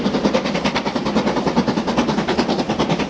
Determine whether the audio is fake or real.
real